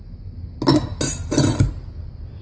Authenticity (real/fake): real